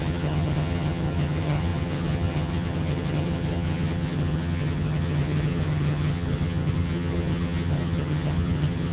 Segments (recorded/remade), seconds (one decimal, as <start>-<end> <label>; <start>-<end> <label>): 0.0-8.9 remade